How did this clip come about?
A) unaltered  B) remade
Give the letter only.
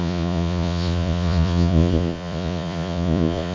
B